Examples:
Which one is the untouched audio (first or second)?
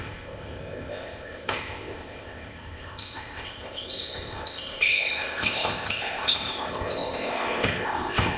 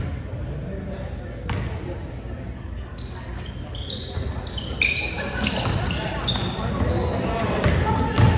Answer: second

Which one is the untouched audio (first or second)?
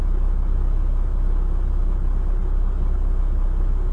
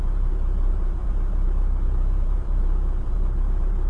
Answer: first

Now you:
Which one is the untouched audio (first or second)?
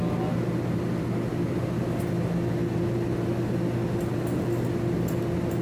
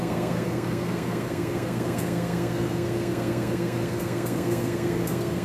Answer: first